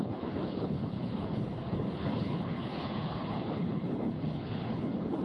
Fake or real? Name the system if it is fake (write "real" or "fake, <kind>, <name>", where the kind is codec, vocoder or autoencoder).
fake, codec, HILCodec